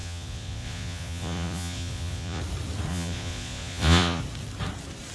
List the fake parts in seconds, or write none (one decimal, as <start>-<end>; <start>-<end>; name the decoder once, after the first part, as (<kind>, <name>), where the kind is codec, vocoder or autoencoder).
0.0-2.4 (vocoder, Vocos); 2.9-4.2